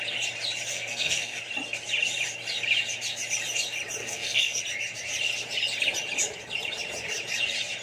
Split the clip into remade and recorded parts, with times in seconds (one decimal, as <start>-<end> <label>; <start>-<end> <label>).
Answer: 0.0-0.7 recorded; 0.7-1.4 remade; 1.4-4.0 recorded; 4.0-4.6 remade; 4.6-7.8 recorded

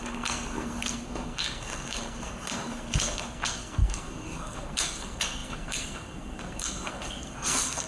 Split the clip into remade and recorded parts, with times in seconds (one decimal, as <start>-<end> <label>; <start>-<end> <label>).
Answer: 0.0-7.9 remade

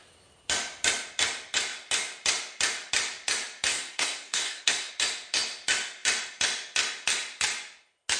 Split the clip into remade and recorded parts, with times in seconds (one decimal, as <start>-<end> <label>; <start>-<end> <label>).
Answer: 0.0-3.7 recorded; 3.7-4.9 remade; 4.9-8.2 recorded

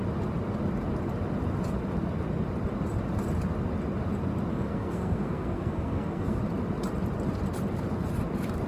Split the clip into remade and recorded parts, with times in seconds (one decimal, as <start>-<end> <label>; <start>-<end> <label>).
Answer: 0.0-4.5 recorded; 4.5-6.4 remade; 6.4-8.7 recorded

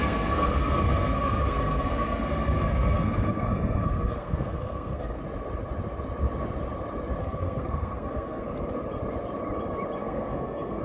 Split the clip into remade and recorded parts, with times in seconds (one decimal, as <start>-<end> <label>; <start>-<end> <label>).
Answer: 0.0-5.2 remade; 5.2-7.2 recorded; 7.2-8.7 remade; 8.7-10.0 recorded; 10.0-10.8 remade